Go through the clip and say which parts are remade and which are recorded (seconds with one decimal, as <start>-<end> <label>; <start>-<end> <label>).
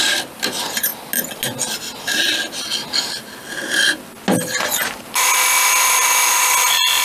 0.0-7.0 recorded